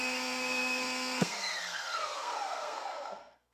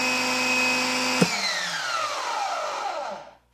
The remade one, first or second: first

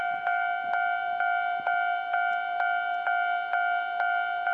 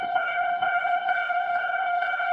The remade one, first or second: second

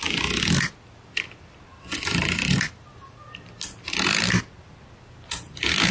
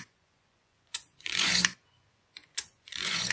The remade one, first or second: second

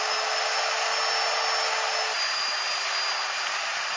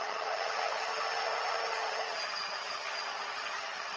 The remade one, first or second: second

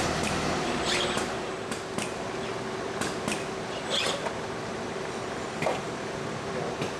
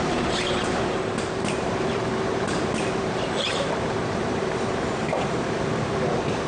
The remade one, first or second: second